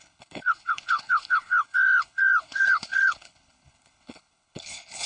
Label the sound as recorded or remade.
remade